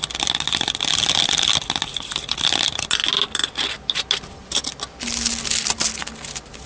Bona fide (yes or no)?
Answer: yes